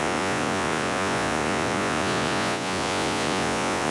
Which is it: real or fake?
fake